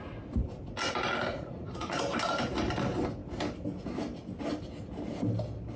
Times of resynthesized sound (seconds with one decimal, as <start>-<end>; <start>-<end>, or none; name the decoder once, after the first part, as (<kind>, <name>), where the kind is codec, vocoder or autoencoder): 1.3-2.0 (vocoder, Vocos)